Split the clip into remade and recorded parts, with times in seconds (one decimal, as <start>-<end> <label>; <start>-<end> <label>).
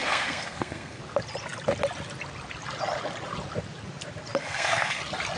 0.0-1.0 remade; 1.0-4.4 recorded; 4.4-5.0 remade; 5.0-5.4 recorded